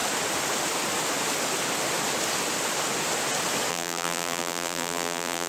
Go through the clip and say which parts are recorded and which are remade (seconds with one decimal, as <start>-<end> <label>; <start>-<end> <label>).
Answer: 0.0-3.7 recorded; 3.7-5.5 remade